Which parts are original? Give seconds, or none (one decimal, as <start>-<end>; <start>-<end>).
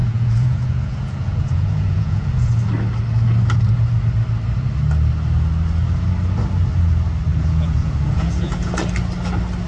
2.5-7.3; 8.7-9.7